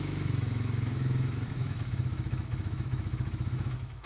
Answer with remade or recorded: remade